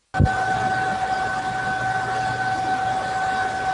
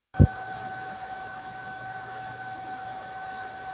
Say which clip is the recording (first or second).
first